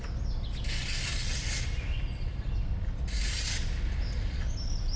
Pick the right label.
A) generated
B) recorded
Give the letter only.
B